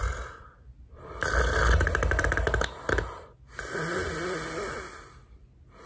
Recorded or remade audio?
recorded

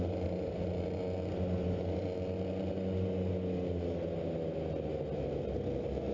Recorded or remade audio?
recorded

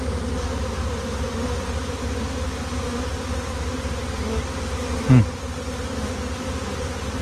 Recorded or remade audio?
recorded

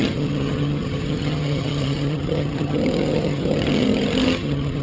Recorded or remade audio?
remade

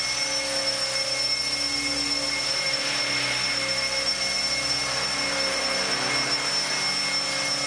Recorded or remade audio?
recorded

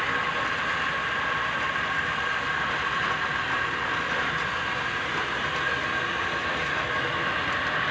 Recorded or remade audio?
recorded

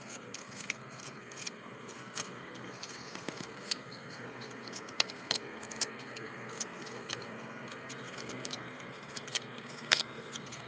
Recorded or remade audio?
remade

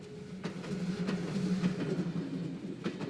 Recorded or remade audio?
recorded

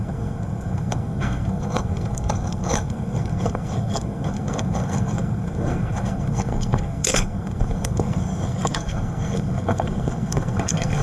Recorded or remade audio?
remade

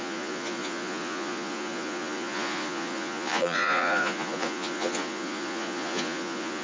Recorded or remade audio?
remade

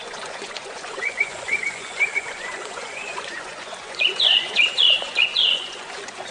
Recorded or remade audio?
remade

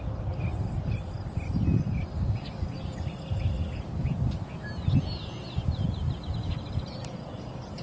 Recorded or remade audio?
recorded